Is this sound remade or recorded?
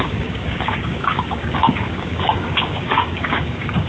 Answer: remade